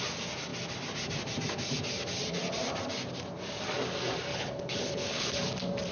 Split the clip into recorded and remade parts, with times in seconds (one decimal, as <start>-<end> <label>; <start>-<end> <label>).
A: 0.0-4.3 recorded; 4.3-5.4 remade; 5.4-5.9 recorded